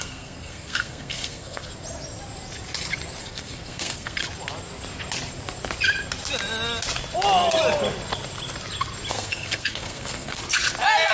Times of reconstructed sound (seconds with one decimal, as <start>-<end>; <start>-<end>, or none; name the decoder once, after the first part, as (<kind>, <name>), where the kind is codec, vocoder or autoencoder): 0.0-1.7 (codec, SNAC); 3.2-4.2; 9.1-10.4